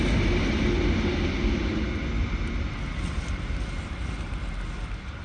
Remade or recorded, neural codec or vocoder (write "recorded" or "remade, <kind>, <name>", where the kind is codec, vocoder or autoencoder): recorded